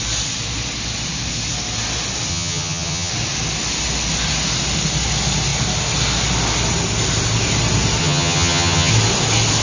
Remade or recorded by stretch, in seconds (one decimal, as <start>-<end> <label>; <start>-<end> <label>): 0.0-2.3 recorded; 2.3-3.1 remade; 3.1-8.0 recorded; 8.0-8.9 remade; 8.9-9.6 recorded